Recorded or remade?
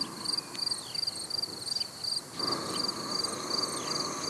recorded